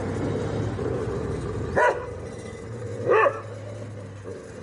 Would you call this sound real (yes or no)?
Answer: yes